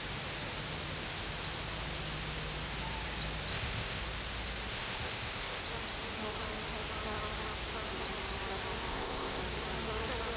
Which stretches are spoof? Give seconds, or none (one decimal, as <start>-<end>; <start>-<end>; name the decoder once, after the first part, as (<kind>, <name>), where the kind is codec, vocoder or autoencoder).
3.5-4.0 (codec, ZipCodec); 4.7-5.6; 8.9-9.4